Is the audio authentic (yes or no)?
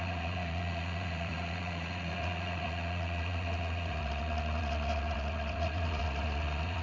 no